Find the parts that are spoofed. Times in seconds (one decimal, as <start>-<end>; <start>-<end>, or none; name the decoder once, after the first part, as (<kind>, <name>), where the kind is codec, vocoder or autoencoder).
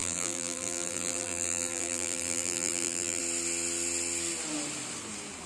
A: 0.0-3.2 (vocoder, BigVGAN v2)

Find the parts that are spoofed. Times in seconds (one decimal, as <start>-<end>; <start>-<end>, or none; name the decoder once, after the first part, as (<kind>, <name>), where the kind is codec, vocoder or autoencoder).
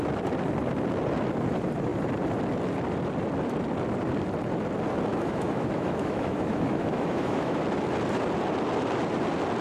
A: 5.1-7.6 (autoencoder, DAC-VAE)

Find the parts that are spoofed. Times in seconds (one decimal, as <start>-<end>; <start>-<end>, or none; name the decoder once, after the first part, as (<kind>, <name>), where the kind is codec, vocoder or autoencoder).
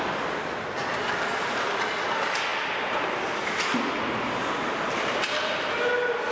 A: none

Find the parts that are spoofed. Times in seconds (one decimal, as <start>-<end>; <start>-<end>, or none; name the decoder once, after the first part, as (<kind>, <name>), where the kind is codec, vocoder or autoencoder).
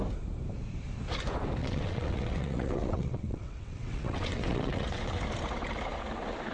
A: 1.6-5.2 (vocoder, WaveNeXt)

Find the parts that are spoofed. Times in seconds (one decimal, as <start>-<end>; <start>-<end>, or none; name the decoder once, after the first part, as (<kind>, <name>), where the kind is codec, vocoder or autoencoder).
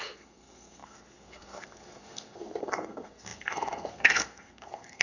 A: 0.0-5.0 (codec, SNAC)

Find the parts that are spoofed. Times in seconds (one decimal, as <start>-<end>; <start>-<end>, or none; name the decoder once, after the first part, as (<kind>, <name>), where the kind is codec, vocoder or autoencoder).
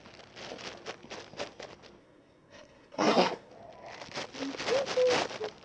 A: 2.0-3.5 (codec, SNAC)